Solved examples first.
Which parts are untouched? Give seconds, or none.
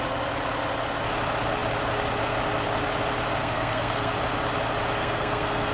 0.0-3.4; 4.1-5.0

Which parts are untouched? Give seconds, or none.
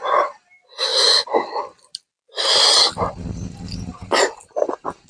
0.0-5.1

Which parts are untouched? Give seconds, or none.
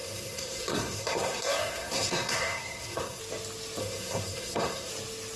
3.2-3.8; 4.9-5.4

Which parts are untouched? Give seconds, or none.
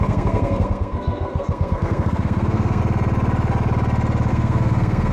2.8-4.3